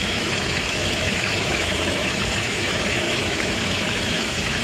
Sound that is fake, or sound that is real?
fake